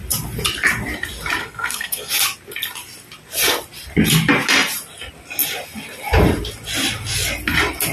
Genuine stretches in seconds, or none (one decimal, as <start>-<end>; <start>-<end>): 0.0-1.4; 2.1-7.9